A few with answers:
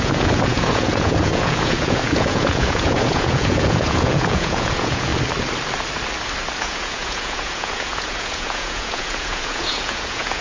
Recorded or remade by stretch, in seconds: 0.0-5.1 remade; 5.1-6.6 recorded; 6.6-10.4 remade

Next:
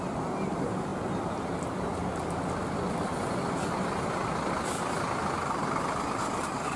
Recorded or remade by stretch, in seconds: 0.0-6.8 recorded

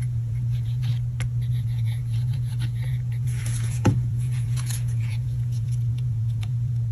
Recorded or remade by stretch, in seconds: 0.0-0.9 remade; 0.9-1.5 recorded; 1.5-6.9 remade

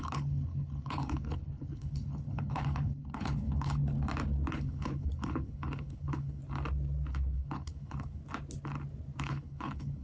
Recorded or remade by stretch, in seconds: 0.0-3.8 remade; 3.8-4.5 recorded; 4.5-6.4 remade; 6.4-7.1 recorded; 7.1-8.2 remade; 8.2-9.2 recorded; 9.2-10.0 remade

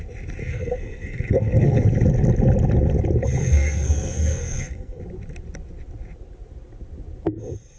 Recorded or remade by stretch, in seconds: 0.0-0.4 recorded; 0.4-1.8 remade; 1.8-3.4 recorded; 3.4-5.0 remade; 5.0-7.8 recorded

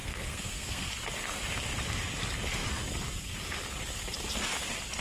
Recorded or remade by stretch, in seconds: 0.0-0.9 remade; 0.9-5.0 recorded

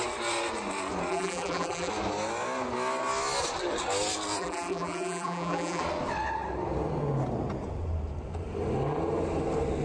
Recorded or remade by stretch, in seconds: 0.0-1.1 recorded; 1.1-1.9 remade; 1.9-4.4 recorded; 4.4-5.8 remade; 5.8-9.8 recorded

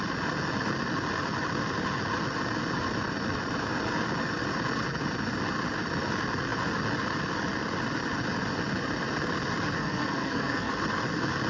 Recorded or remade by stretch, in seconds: 0.0-9.8 recorded; 9.8-10.7 remade; 10.7-11.5 recorded